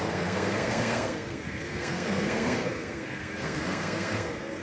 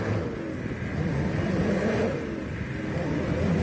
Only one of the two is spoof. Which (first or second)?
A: first